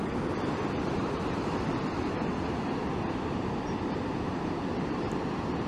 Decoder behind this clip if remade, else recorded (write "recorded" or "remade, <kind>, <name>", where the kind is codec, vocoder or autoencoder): recorded